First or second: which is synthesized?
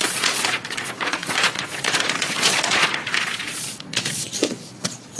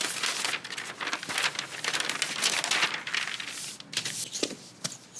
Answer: first